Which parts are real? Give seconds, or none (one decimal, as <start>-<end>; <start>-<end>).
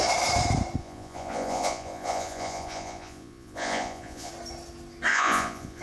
0.0-0.8; 4.3-5.1